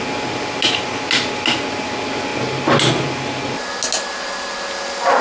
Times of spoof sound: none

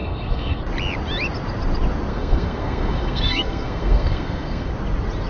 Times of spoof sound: 0.0-0.6 (codec, SNAC); 2.1-4.7